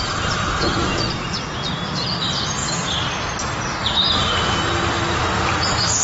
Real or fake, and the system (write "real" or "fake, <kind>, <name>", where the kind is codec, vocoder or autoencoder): real